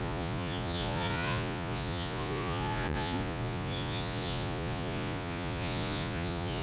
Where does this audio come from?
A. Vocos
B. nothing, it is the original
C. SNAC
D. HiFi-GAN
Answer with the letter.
A